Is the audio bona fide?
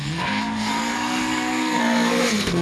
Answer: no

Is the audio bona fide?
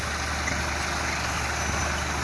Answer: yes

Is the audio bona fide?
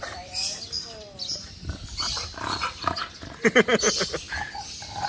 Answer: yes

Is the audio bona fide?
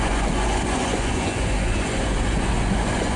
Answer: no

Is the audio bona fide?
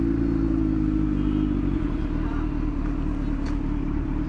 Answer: yes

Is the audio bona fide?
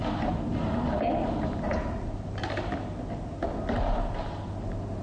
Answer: yes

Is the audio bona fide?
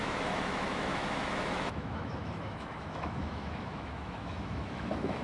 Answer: no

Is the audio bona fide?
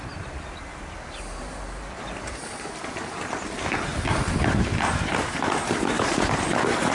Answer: no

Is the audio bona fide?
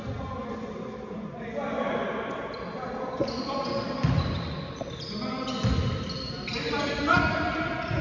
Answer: yes